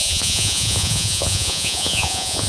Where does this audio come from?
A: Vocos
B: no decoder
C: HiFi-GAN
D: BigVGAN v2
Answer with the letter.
A